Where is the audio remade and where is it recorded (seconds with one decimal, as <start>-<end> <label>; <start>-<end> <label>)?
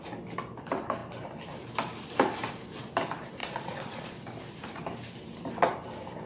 0.0-3.4 recorded; 3.4-4.2 remade; 4.2-6.3 recorded